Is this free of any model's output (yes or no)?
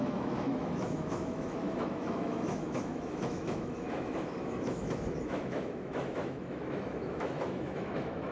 no